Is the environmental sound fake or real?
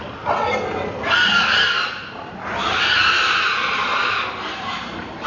real